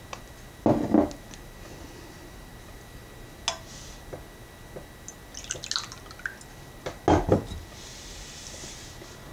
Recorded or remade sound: recorded